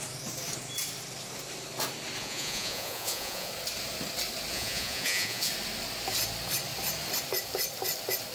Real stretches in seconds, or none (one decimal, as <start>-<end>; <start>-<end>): 0.0-2.2; 3.5-4.5; 5.5-8.3